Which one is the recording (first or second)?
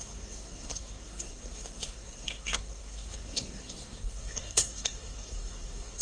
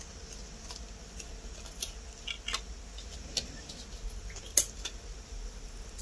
second